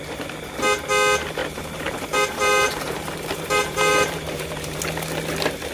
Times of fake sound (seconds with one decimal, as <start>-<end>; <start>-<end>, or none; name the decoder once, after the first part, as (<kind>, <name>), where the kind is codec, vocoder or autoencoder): 1.4-4.8 (vocoder, BigVGAN v2)